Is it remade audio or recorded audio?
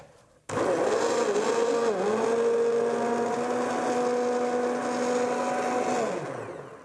recorded